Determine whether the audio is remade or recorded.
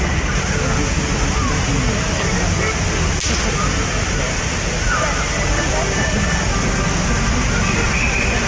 recorded